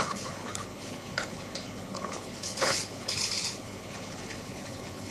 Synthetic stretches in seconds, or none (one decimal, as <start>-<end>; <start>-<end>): 0.0-5.1